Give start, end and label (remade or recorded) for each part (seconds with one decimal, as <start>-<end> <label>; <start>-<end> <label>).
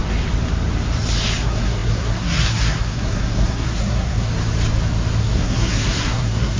0.0-1.4 recorded; 1.4-4.3 remade; 4.3-5.2 recorded; 5.2-6.6 remade